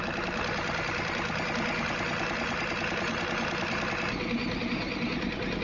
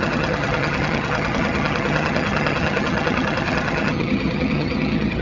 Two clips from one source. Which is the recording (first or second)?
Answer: first